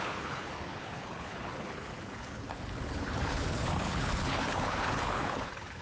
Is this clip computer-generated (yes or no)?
yes